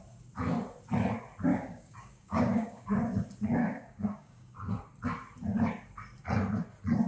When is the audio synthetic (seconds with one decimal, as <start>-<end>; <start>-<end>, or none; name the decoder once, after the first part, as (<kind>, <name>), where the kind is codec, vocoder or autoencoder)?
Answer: 1.5-3.0 (codec, DAC); 3.6-4.7